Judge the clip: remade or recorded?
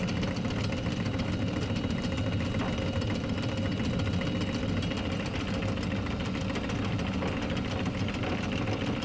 recorded